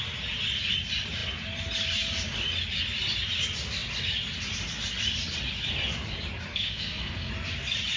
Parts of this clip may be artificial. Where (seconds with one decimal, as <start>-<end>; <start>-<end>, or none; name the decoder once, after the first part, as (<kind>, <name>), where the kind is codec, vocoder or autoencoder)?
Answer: 6.5-7.3 (codec, SNAC)